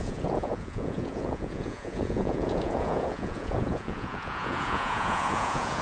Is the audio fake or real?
fake